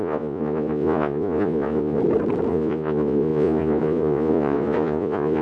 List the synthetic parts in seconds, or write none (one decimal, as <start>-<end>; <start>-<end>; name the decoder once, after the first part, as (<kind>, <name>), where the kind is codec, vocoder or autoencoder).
0.0-2.0 (vocoder, Vocos); 2.5-5.4